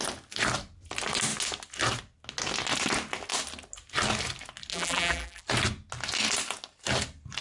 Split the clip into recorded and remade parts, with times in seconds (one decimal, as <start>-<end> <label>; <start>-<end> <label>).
0.0-4.7 recorded; 4.7-5.4 remade; 5.4-7.4 recorded